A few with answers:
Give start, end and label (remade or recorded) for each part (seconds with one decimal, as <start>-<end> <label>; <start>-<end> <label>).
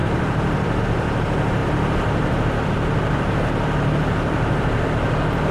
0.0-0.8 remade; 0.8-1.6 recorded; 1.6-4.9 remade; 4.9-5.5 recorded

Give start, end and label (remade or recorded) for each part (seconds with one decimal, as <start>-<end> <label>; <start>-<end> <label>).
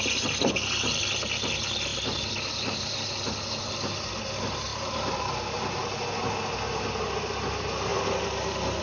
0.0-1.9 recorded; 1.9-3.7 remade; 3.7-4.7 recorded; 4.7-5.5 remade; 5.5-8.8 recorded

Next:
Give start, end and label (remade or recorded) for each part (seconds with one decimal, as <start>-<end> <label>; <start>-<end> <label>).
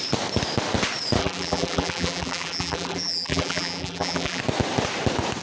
0.0-1.2 recorded; 1.2-4.4 remade; 4.4-5.4 recorded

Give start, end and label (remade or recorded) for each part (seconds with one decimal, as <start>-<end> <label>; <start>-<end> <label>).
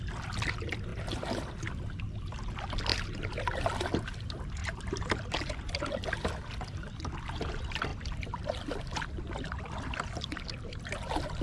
0.0-0.9 recorded; 0.9-1.5 remade; 1.5-2.9 recorded; 2.9-3.4 remade; 3.4-4.6 recorded; 4.6-5.8 remade; 5.8-11.4 recorded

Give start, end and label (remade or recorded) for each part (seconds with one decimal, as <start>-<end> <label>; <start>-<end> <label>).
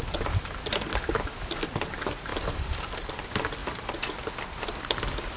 0.0-2.3 recorded; 2.3-3.1 remade; 3.1-5.4 recorded